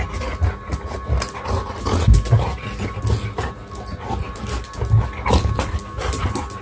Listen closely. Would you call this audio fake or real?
real